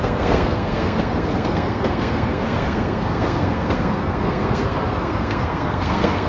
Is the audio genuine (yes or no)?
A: no